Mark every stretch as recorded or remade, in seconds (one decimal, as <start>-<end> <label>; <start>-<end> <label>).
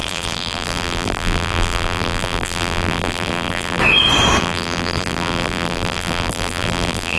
0.0-3.8 remade; 3.8-4.4 recorded; 4.4-7.2 remade